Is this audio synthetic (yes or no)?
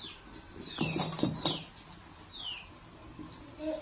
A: no